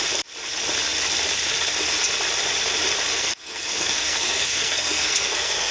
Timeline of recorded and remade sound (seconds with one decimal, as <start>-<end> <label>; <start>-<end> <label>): 0.0-3.1 recorded; 3.1-5.7 remade